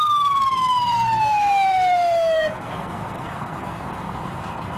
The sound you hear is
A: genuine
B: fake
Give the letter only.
B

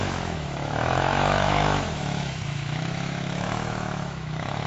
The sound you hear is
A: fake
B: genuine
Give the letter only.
A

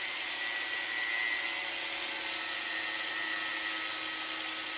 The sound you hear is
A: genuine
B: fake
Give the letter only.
A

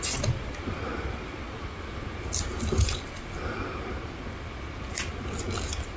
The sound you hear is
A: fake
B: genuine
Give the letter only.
B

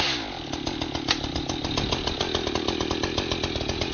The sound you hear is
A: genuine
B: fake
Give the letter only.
A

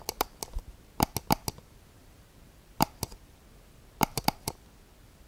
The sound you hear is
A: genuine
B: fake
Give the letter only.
A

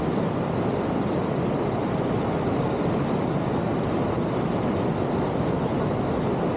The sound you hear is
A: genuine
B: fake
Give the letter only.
A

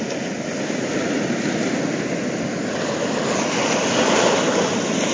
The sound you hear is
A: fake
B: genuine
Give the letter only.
B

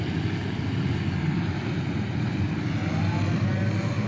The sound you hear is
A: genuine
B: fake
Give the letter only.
A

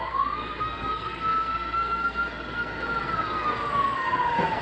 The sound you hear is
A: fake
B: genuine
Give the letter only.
A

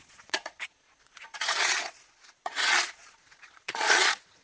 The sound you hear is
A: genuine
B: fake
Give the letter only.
B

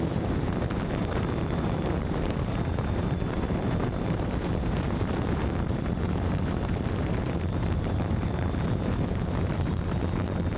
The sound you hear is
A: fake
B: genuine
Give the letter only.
A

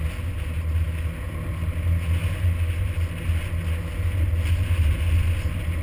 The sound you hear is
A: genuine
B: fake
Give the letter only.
A